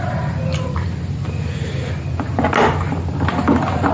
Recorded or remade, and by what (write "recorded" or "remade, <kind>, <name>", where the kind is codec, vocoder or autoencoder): recorded